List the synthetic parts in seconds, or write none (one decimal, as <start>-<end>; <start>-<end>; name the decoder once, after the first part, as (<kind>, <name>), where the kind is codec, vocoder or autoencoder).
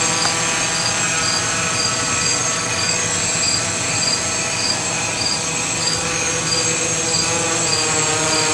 2.4-3.1 (codec, DAC); 5.8-6.3